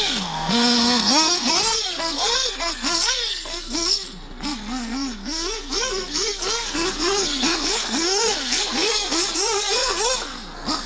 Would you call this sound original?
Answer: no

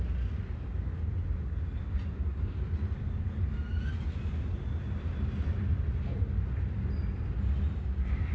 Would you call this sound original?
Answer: yes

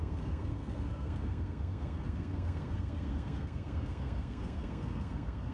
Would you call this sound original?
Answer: no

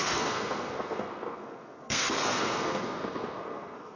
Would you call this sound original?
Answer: no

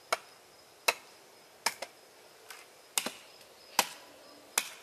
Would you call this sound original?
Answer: yes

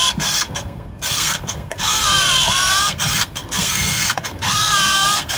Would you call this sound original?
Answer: no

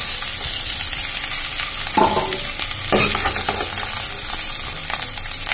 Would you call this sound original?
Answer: yes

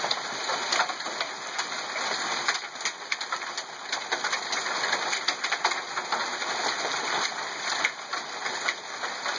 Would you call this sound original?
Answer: yes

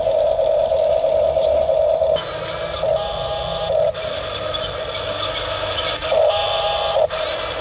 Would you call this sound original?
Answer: yes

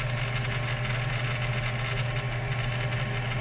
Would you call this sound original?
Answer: yes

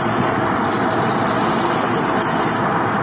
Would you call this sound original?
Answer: yes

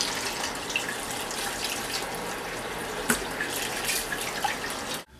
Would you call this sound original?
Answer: yes